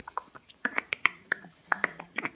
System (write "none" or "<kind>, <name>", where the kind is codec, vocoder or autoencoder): vocoder, Vocos